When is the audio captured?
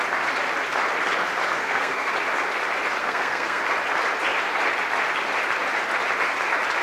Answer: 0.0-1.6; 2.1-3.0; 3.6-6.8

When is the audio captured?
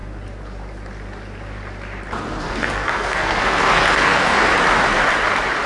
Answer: 0.0-2.4; 4.5-5.7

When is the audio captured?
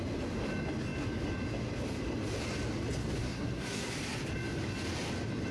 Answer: 0.0-3.2; 3.9-5.5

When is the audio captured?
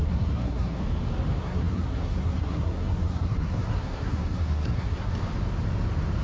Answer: 0.8-1.4; 5.1-6.2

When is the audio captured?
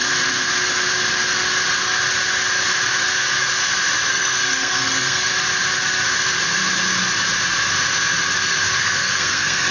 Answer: 0.0-4.1; 5.3-8.8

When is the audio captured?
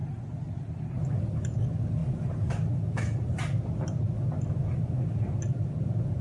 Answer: 0.0-6.2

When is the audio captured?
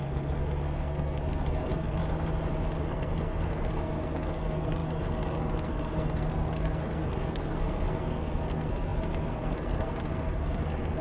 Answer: 2.0-2.8